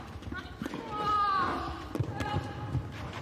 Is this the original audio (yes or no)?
yes